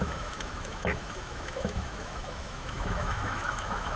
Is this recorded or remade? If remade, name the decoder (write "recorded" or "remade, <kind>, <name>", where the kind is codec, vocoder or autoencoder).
remade, autoencoder, DAC-VAE